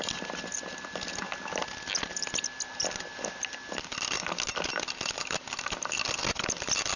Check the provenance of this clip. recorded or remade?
recorded